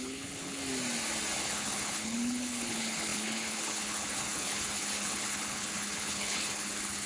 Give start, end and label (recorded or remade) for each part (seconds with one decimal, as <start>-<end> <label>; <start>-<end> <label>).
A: 0.0-0.6 remade; 0.6-1.4 recorded; 1.4-7.1 remade